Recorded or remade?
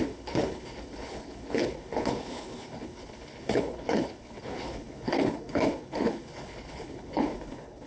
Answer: remade